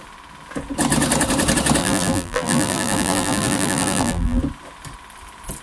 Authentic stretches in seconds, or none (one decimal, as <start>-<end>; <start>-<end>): 0.0-1.8; 4.4-5.6